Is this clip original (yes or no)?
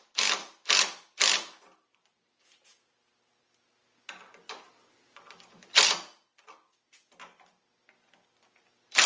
yes